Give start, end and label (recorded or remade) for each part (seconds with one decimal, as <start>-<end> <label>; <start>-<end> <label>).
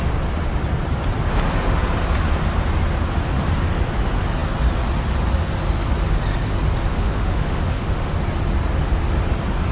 0.0-6.9 recorded; 6.9-8.2 remade; 8.2-9.7 recorded